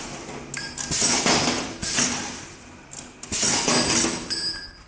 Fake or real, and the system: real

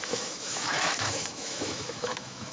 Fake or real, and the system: fake, autoencoder, DAC-VAE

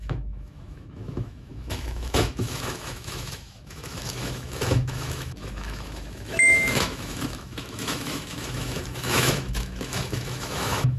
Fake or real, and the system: fake, autoencoder, DAC-VAE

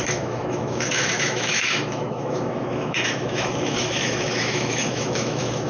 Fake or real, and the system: fake, autoencoder, DAC-VAE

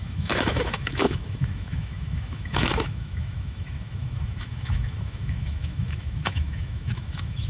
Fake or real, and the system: fake, autoencoder, DAC-VAE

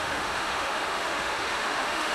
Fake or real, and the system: fake, autoencoder, DAC-VAE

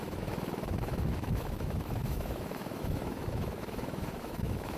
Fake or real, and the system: fake, autoencoder, DAC-VAE